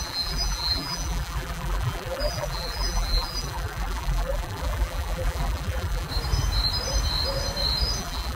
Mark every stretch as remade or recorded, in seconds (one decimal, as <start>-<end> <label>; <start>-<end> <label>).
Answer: 0.0-6.1 remade; 6.1-8.0 recorded; 8.0-8.4 remade

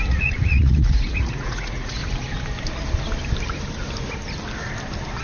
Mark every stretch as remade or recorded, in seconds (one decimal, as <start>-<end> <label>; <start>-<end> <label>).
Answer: 0.0-2.0 remade; 2.0-5.2 recorded

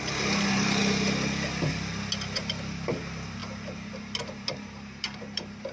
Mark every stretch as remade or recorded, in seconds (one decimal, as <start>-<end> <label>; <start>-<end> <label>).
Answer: 0.0-0.8 remade; 0.8-3.0 recorded; 3.0-5.7 remade

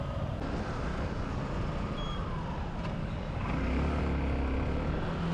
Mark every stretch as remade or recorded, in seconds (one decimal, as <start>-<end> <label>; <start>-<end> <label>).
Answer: 0.0-0.9 recorded; 0.9-1.4 remade; 1.4-3.0 recorded; 3.0-4.0 remade; 4.0-5.3 recorded

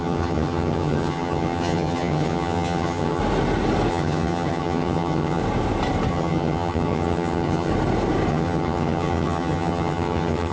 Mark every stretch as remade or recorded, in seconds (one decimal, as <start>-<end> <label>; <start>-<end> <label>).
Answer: 0.0-3.2 remade; 3.2-3.9 recorded; 3.9-5.4 remade; 5.4-6.1 recorded; 6.1-7.7 remade; 7.7-8.3 recorded; 8.3-10.5 remade